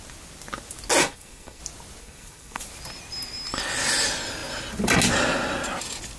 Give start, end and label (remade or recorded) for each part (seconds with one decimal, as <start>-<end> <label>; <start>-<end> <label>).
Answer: 0.0-1.0 recorded; 1.0-1.6 remade; 1.6-2.0 recorded; 2.0-2.6 remade; 2.6-6.2 recorded